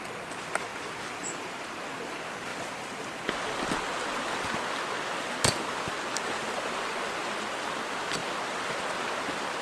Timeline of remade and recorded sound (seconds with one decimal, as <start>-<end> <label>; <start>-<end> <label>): 0.0-9.6 recorded